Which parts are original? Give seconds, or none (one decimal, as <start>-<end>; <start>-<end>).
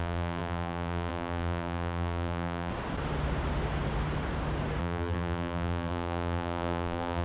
2.7-4.8